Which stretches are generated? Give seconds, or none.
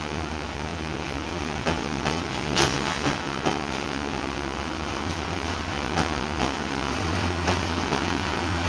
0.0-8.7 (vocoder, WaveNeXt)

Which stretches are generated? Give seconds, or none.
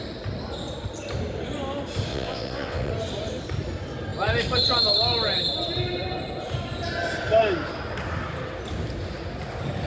2.1-2.9 (vocoder, WaveNeXt)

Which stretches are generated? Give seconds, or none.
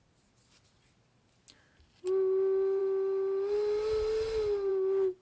none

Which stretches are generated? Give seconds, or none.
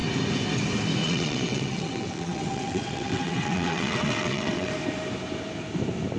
1.0-4.7 (vocoder, WaveNeXt)